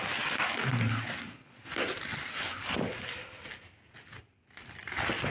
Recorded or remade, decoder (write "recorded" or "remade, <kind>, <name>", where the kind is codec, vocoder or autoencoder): recorded